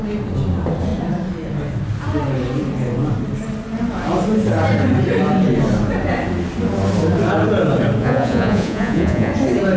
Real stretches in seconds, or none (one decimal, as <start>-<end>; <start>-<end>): 0.0-8.0; 9.3-9.8